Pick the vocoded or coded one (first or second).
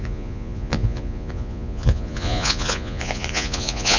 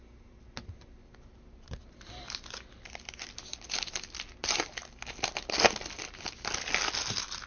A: first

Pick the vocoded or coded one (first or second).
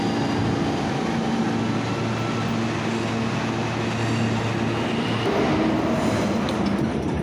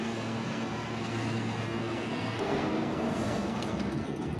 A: second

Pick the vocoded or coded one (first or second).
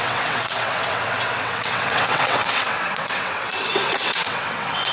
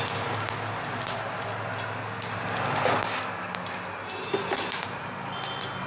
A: first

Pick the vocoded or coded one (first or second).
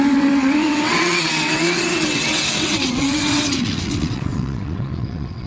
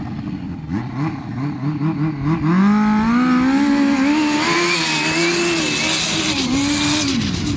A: first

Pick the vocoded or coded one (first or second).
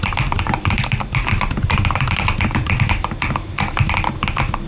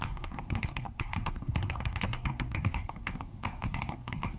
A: second